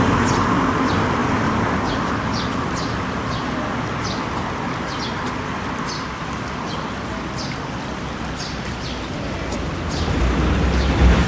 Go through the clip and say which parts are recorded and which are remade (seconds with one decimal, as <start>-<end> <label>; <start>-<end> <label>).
0.0-11.3 recorded